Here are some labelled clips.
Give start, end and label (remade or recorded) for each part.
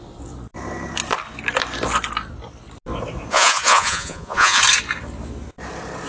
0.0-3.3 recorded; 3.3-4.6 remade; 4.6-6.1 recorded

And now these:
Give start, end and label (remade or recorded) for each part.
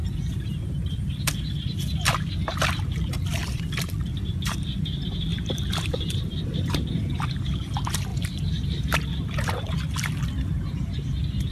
0.0-1.8 remade; 1.8-3.4 recorded; 3.4-4.8 remade; 4.8-5.3 recorded; 5.3-7.4 remade; 7.4-11.5 recorded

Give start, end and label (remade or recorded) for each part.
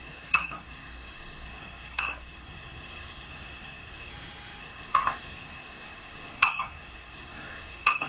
0.0-4.1 remade; 4.1-4.6 recorded; 4.6-8.1 remade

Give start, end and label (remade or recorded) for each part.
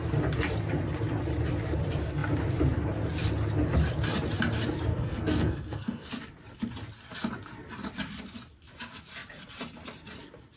0.0-4.9 recorded; 4.9-6.1 remade; 6.1-10.6 recorded